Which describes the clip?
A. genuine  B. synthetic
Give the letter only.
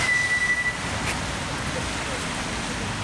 A